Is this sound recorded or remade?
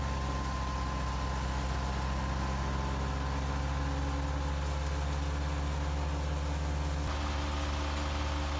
recorded